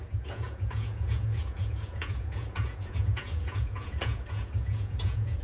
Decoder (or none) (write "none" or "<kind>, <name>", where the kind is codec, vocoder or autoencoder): vocoder, Vocos